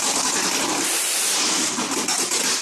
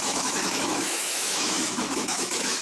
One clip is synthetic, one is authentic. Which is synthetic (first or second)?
second